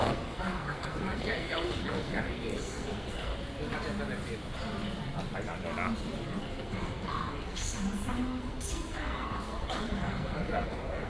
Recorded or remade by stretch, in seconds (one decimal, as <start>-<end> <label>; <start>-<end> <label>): 0.0-3.3 remade; 3.3-6.4 recorded; 6.4-11.1 remade